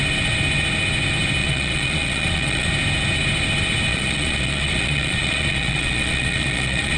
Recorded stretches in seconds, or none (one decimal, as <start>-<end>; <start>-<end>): 0.0-1.4; 2.7-3.9